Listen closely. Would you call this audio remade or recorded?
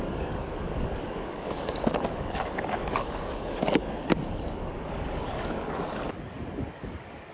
remade